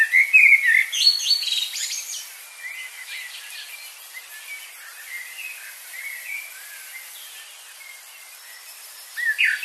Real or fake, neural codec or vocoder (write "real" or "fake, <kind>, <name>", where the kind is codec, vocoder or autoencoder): real